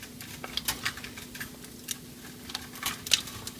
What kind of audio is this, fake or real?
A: real